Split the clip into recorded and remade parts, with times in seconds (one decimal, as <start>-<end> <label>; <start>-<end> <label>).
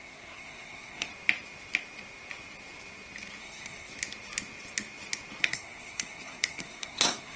0.0-1.1 remade; 1.1-3.4 recorded; 3.4-3.9 remade; 3.9-5.4 recorded; 5.4-7.4 remade